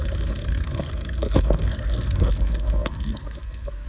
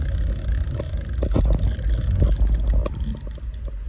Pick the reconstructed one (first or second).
first